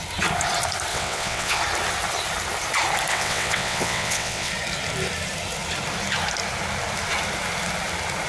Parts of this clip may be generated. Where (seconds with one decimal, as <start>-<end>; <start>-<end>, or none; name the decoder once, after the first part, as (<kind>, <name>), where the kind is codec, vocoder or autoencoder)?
0.9-1.6 (vocoder, WaveNeXt); 3.1-4.5